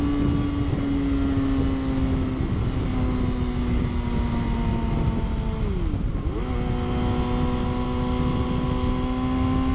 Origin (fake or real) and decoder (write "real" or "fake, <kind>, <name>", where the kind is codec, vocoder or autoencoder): real